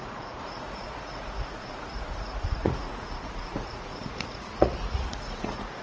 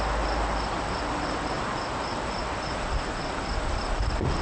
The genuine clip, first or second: second